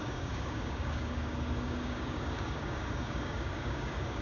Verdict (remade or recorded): remade